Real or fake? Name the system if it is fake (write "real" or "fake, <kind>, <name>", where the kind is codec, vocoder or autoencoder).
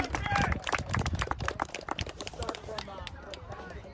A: fake, vocoder, BigVGAN v2